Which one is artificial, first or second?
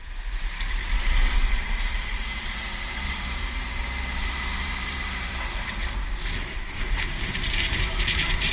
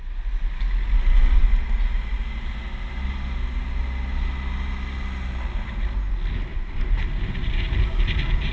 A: first